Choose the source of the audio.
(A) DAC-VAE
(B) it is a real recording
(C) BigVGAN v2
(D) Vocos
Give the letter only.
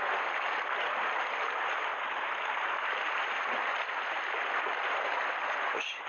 B